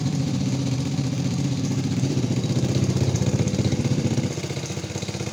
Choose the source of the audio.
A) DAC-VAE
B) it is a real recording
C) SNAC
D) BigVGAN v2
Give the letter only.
D